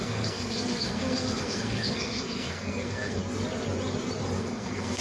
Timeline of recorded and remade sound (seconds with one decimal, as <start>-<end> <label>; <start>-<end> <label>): 0.0-3.2 remade; 3.2-4.4 recorded; 4.4-5.0 remade